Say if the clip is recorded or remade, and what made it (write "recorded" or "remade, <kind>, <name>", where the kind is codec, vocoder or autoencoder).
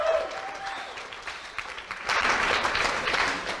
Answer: remade, vocoder, BigVGAN v2